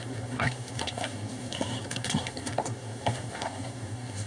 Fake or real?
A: fake